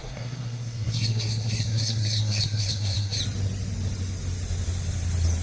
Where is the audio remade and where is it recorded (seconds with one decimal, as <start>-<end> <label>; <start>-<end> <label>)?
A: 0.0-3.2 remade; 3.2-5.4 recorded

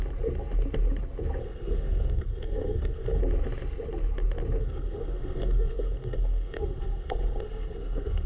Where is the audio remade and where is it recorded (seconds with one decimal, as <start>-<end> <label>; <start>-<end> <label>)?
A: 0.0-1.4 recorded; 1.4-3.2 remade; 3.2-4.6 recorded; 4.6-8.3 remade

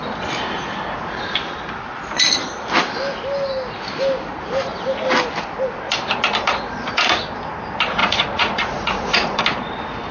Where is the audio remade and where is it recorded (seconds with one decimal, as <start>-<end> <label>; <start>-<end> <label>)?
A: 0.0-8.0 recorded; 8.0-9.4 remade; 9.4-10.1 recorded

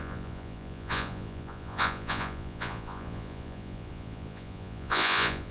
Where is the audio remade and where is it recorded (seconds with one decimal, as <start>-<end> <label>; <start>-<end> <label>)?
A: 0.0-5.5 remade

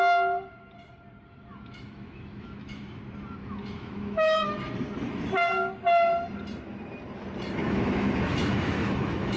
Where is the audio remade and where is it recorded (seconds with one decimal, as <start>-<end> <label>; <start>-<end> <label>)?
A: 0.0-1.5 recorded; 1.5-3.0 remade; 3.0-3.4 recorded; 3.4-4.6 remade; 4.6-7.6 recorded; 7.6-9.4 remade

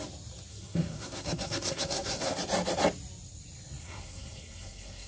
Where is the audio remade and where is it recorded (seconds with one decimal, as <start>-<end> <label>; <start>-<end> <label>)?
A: 0.0-0.5 recorded; 0.5-2.4 remade; 2.4-3.8 recorded; 3.8-5.1 remade